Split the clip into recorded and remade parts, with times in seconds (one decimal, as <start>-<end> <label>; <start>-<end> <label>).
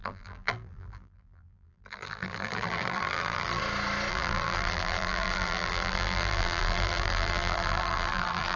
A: 0.0-3.6 remade; 3.6-4.1 recorded; 4.1-8.6 remade